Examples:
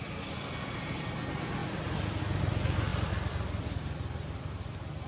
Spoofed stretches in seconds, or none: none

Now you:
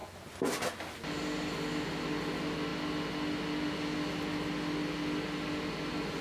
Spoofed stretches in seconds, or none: none

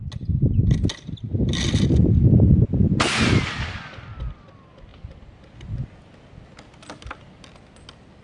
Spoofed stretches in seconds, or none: none